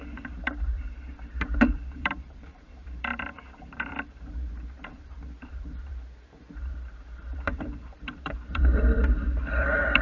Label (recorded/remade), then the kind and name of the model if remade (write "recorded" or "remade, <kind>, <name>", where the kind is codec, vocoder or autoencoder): remade, vocoder, BigVGAN v2